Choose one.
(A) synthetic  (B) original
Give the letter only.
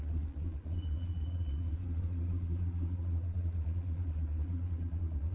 A